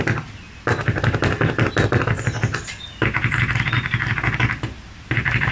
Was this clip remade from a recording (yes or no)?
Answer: no